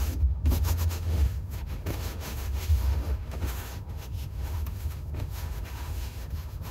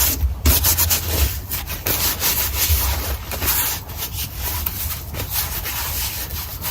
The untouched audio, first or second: second